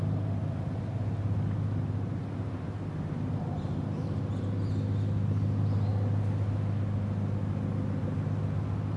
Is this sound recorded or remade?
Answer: recorded